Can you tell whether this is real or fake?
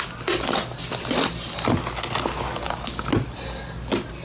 real